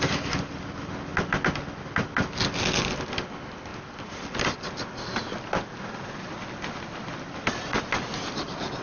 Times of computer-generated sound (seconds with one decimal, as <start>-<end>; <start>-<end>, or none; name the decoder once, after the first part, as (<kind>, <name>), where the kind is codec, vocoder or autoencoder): none